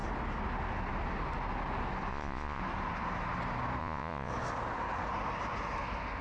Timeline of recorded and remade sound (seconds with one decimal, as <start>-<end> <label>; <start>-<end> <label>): 0.0-2.1 recorded; 2.1-2.6 remade; 2.6-3.8 recorded; 3.8-4.3 remade; 4.3-6.2 recorded